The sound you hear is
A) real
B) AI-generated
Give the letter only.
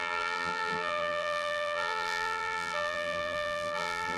B